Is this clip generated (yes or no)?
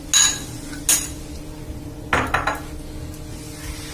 no